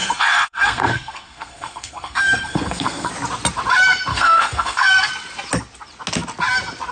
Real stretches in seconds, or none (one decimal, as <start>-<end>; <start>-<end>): 3.1-4.1; 5.1-6.9